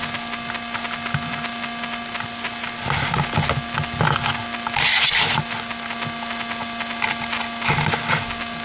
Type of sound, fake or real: real